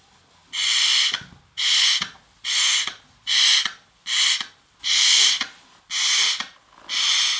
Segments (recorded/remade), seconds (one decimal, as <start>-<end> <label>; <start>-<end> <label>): 0.0-7.4 recorded

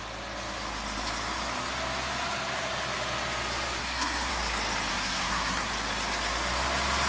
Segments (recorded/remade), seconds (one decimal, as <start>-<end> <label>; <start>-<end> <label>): 0.0-3.8 recorded; 3.8-4.3 remade; 4.3-4.9 recorded; 4.9-5.7 remade; 5.7-7.1 recorded